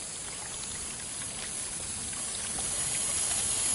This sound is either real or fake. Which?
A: real